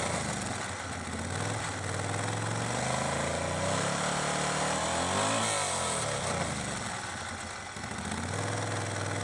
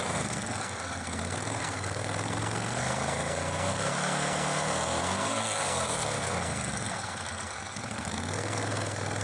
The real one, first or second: first